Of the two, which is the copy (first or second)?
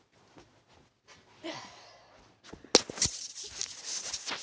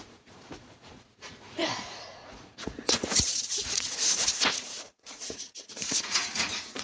second